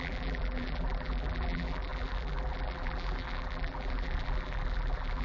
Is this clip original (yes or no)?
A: no